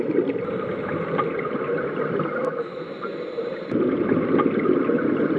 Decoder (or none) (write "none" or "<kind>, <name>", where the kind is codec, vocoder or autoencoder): none